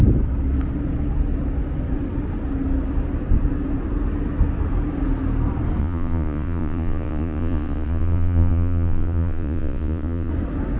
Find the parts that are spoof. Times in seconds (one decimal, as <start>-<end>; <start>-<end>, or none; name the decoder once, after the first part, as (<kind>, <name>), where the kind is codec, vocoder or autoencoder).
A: 5.8-10.3 (vocoder, Vocos)